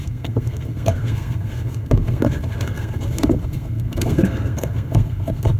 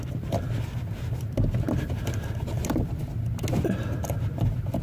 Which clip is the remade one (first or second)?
first